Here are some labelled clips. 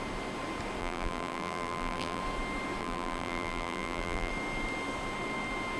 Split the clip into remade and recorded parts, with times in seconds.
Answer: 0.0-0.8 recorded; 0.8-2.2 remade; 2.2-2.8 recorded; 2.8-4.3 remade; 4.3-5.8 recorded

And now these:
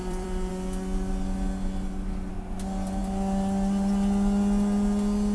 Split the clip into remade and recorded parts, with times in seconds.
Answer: 0.0-0.5 remade; 0.5-5.3 recorded